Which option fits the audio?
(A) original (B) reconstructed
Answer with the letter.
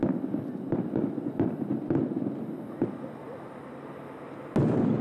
A